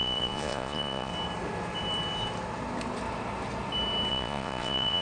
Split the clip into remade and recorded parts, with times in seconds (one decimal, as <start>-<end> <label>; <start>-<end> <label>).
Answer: 0.0-1.1 remade; 1.1-4.1 recorded; 4.1-5.0 remade